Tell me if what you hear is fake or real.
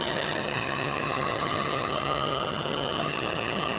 fake